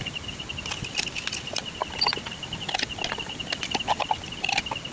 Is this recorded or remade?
recorded